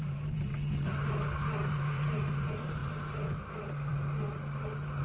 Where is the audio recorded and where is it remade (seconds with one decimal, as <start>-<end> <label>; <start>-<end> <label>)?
0.0-0.5 remade; 0.5-1.1 recorded; 1.1-3.9 remade; 3.9-5.0 recorded